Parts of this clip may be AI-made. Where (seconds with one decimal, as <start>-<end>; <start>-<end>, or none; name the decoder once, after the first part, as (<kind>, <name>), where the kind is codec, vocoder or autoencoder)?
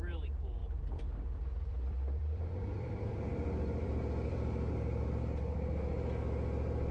0.6-4.7 (vocoder, BigVGAN v2)